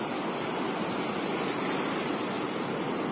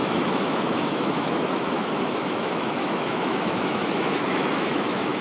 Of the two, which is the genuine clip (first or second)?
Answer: first